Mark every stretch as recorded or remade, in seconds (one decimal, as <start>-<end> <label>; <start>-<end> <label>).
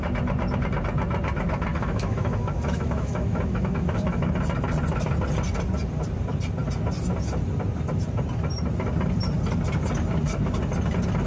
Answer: 0.0-1.7 recorded; 1.7-4.3 remade; 4.3-11.3 recorded